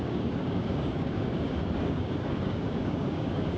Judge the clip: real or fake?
fake